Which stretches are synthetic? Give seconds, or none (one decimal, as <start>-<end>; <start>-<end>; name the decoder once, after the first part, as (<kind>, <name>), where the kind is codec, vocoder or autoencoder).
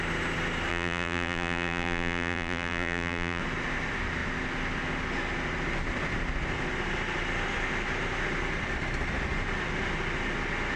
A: 0.7-3.4 (vocoder, BigVGAN v2)